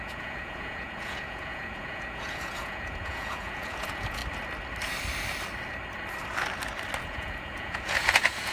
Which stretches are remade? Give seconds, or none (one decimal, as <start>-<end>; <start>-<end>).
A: 0.0-4.2; 7.0-8.5